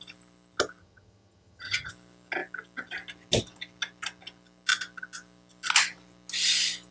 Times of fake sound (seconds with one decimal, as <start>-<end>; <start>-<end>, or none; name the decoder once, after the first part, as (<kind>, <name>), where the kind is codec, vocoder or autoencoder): 0.8-1.9 (vocoder, HiFi-GAN)